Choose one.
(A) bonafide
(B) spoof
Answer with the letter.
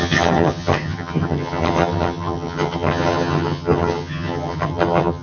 B